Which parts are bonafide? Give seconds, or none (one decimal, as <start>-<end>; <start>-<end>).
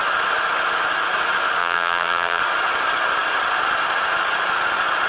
0.0-1.6; 2.4-5.1